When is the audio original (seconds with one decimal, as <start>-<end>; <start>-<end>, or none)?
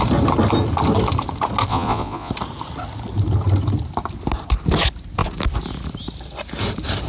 0.0-1.7; 2.3-7.1